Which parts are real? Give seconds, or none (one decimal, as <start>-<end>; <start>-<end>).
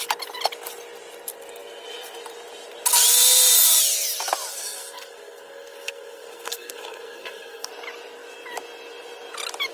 0.0-4.5; 7.7-9.7